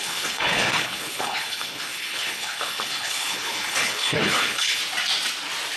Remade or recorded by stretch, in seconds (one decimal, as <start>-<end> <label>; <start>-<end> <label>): 0.0-4.8 remade; 4.8-5.8 recorded